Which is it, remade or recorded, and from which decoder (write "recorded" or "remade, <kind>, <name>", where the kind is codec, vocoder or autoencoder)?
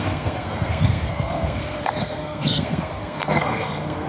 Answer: remade, codec, SNAC